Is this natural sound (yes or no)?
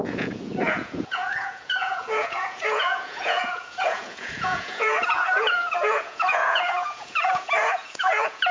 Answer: no